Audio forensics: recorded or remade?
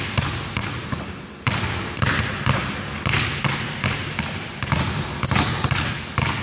recorded